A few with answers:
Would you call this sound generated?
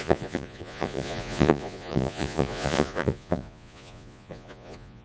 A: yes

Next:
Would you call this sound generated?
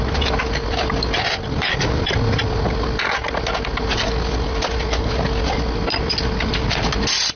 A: no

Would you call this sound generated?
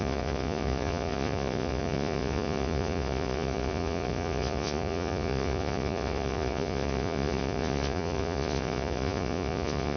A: yes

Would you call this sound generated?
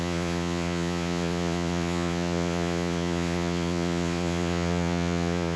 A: yes